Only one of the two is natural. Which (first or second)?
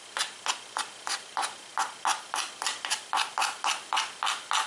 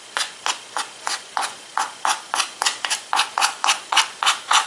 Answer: first